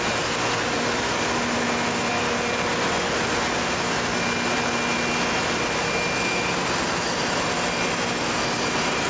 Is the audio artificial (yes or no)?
no